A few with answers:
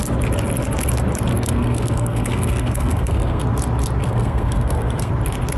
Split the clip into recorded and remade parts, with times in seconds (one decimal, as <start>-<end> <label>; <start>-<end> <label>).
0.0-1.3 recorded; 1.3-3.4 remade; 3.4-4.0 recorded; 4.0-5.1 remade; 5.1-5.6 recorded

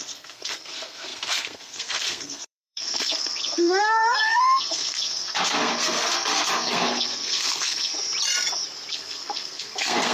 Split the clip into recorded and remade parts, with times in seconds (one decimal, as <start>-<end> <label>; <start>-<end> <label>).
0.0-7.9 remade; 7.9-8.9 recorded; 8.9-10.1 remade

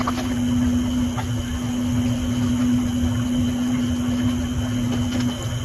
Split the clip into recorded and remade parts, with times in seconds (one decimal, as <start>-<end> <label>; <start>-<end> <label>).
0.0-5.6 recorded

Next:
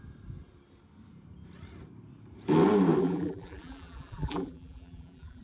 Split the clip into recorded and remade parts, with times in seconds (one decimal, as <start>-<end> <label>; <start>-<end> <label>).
0.0-3.0 recorded; 3.0-5.4 remade

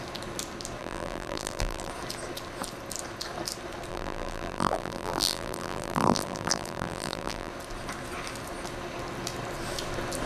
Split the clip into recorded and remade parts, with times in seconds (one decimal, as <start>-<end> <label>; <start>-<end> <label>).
0.0-0.8 recorded; 0.8-1.9 remade; 1.9-3.9 recorded; 3.9-7.5 remade; 7.5-10.3 recorded